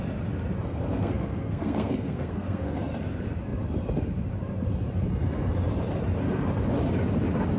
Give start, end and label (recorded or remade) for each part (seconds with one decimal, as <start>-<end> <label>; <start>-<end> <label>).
0.0-0.7 recorded; 0.7-2.8 remade; 2.8-7.6 recorded